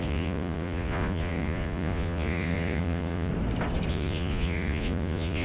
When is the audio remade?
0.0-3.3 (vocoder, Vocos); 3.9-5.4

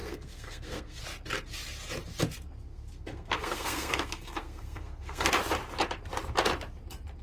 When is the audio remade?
0.0-1.0 (codec, SNAC); 2.7-5.3

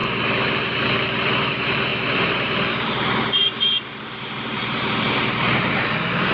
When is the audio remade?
1.9-5.7 (vocoder, BigVGAN v2)

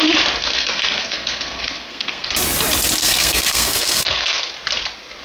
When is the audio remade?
0.4-2.3 (codec, SNAC); 3.0-4.5

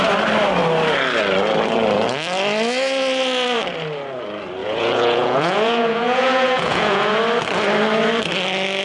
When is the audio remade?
4.6-7.2 (vocoder, Vocos)

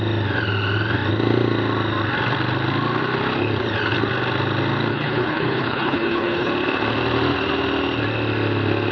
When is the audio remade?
4.9-6.5 (codec, HILCodec)

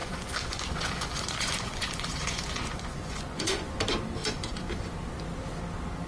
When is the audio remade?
0.0-3.7 (vocoder, Vocos); 4.2-4.8

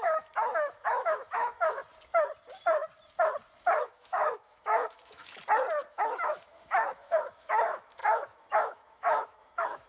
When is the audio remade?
0.0-1.8 (autoencoder, DAC-VAE); 3.6-5.4; 5.9-9.9